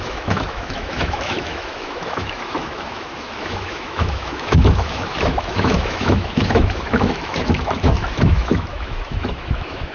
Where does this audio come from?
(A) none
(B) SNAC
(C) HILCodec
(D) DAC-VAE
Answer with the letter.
D